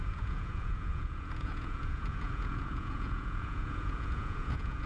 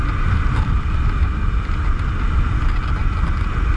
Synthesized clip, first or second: first